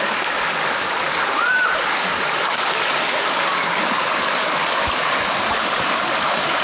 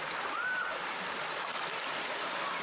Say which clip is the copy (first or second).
first